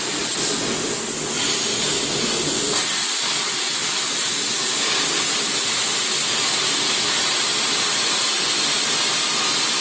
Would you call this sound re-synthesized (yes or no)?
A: no